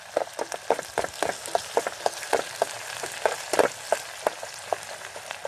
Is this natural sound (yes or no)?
yes